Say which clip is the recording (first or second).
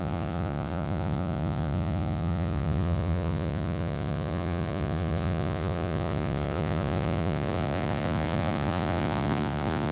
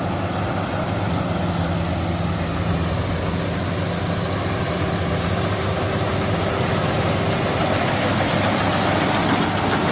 second